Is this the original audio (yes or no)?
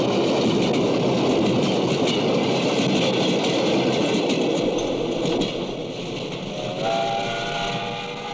yes